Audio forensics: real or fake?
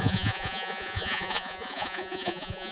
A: fake